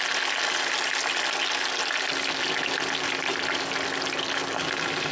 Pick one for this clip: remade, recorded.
recorded